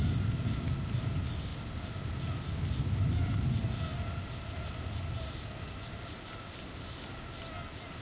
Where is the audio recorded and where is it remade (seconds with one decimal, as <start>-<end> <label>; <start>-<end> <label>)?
0.0-8.0 recorded